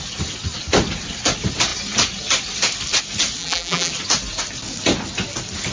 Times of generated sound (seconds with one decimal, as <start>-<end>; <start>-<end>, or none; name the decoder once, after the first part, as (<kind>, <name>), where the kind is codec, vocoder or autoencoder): 3.4-3.9 (vocoder, BigVGAN v2)